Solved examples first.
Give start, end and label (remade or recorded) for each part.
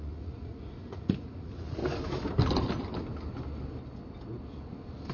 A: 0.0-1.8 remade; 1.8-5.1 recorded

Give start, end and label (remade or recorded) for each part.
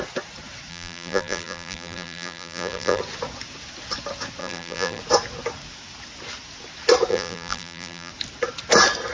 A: 0.0-0.7 recorded; 0.7-3.0 remade; 3.0-4.4 recorded; 4.4-5.0 remade; 5.0-7.1 recorded; 7.1-8.1 remade; 8.1-9.1 recorded